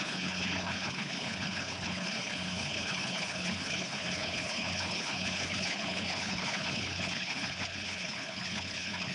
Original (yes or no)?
no